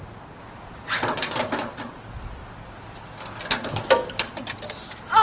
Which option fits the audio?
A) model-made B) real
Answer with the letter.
B